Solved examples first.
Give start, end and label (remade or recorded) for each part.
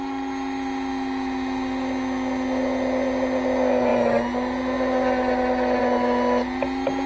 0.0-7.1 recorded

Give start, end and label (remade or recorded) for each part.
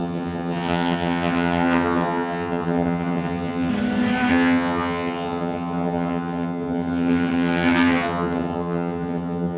0.0-3.7 remade; 3.7-4.3 recorded; 4.3-9.6 remade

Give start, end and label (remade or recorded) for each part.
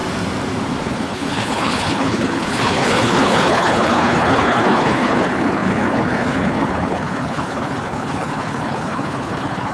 0.0-0.8 recorded; 0.8-9.7 remade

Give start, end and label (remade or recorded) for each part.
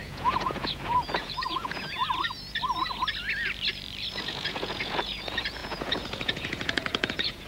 0.0-2.0 remade; 2.0-4.1 recorded; 4.1-7.5 remade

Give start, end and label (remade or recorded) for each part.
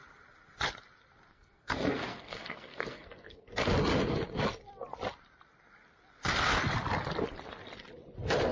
0.0-1.3 recorded; 1.3-3.5 remade; 3.5-8.5 recorded